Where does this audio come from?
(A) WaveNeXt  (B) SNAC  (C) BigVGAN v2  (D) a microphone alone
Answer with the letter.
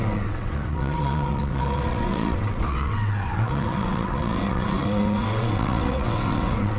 A